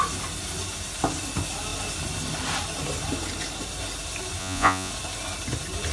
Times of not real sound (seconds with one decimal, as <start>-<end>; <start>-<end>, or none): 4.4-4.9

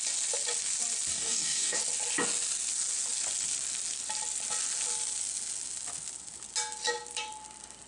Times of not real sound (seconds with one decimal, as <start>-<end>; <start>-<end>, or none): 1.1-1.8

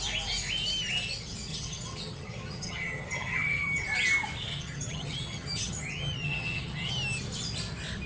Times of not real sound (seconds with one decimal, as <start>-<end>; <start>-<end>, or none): 1.5-3.8; 4.5-6.9

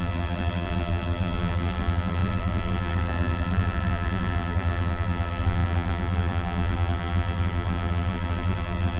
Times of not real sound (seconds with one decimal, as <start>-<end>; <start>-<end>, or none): 0.0-9.0

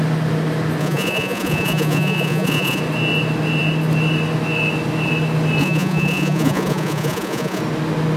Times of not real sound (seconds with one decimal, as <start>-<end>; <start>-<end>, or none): 0.8-2.8; 5.6-7.6